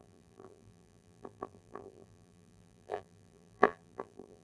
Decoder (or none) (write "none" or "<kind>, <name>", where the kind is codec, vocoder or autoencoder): vocoder, BigVGAN v2